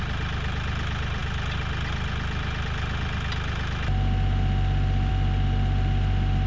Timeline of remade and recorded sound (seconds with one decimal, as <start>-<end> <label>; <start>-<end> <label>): 0.0-6.5 recorded